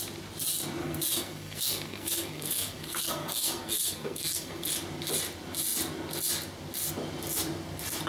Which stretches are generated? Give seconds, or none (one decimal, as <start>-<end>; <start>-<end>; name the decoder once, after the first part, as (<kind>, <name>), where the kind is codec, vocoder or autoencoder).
0.8-4.7 (codec, SNAC)